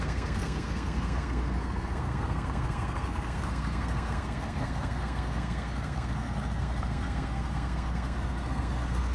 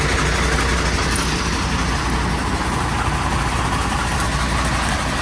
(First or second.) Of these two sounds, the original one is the second